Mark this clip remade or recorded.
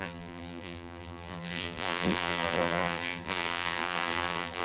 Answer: remade